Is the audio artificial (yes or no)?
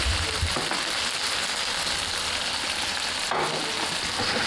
no